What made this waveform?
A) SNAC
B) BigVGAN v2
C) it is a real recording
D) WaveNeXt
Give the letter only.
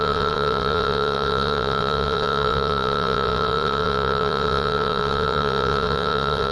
D